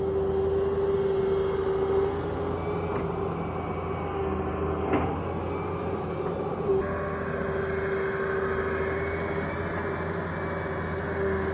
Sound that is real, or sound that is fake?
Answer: real